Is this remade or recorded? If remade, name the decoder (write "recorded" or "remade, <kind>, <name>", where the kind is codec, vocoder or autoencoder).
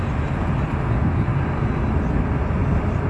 recorded